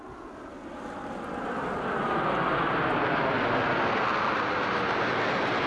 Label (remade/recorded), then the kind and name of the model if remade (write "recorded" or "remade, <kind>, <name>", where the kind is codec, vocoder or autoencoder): recorded